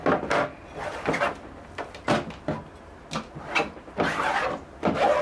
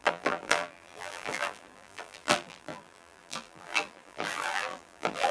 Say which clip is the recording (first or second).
first